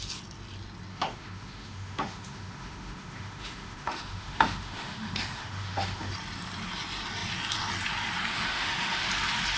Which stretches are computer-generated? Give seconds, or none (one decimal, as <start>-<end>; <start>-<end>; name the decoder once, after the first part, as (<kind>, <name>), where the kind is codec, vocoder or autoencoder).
0.9-6.1 (autoencoder, DAC-VAE); 8.3-9.1